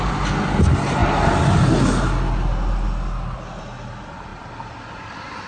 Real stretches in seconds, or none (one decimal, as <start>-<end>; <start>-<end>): 0.0-5.5